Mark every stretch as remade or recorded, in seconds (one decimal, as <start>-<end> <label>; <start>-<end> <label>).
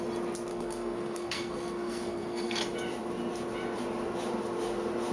0.0-0.5 recorded; 0.5-2.6 remade; 2.6-5.1 recorded